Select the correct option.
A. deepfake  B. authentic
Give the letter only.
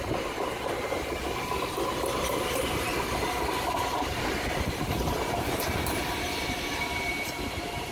A